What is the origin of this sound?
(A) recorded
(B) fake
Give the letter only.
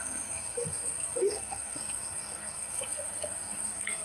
B